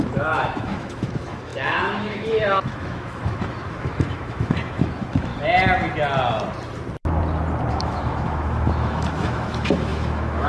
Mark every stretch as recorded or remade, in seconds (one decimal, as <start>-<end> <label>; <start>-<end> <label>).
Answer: 0.0-5.3 remade; 5.3-7.7 recorded; 7.7-10.5 remade